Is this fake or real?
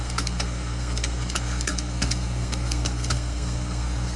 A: fake